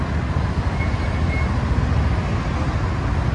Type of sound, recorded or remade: recorded